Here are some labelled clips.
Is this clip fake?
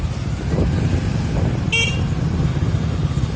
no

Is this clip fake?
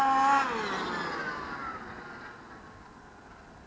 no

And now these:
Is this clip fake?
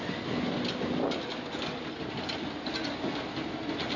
no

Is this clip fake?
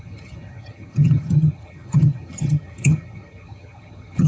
yes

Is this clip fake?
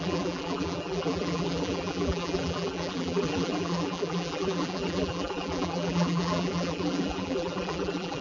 yes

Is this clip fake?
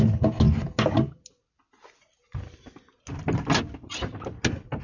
no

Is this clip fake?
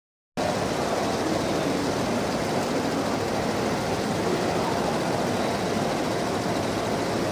no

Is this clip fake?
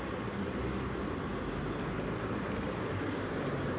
no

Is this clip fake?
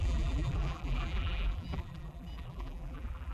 yes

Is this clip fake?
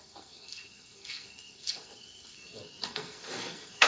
yes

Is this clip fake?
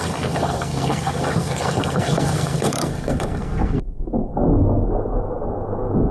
yes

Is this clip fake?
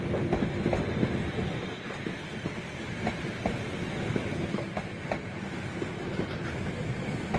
no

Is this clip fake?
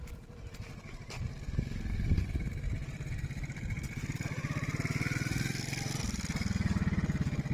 no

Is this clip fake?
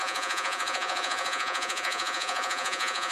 yes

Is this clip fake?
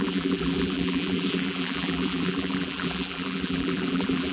yes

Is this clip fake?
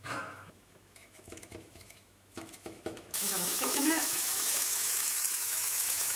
yes